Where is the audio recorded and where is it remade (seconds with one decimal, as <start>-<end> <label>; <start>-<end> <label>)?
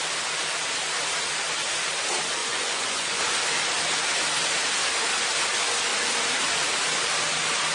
0.0-2.4 recorded; 2.4-3.2 remade; 3.2-7.7 recorded